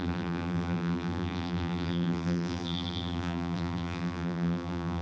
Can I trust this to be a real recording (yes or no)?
no